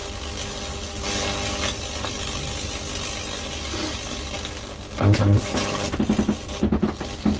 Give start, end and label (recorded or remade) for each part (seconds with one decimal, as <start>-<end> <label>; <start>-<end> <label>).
0.0-7.4 recorded